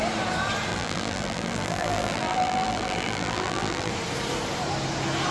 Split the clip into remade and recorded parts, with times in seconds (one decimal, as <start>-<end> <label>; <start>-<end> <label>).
0.0-0.7 recorded; 0.7-3.9 remade; 3.9-5.3 recorded